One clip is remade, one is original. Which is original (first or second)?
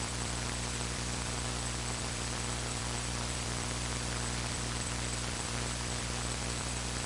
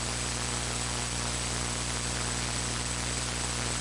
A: second